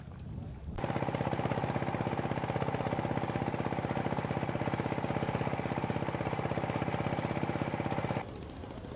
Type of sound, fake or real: real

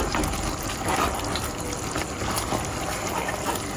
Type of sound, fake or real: real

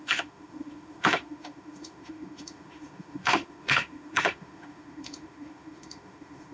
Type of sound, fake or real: fake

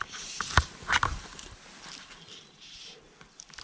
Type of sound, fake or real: real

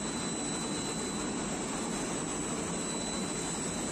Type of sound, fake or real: real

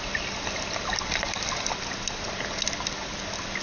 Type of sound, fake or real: real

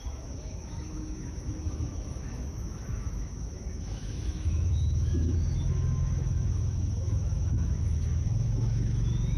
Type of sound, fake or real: fake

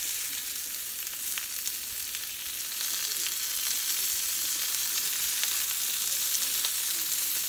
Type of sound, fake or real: real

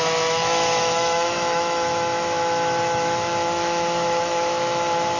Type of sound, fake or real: fake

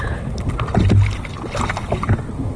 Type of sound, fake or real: real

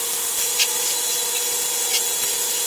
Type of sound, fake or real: real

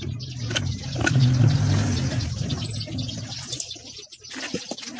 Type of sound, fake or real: real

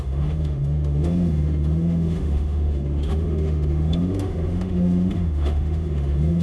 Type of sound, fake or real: fake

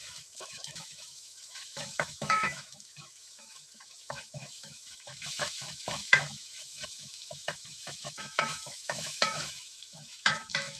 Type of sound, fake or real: fake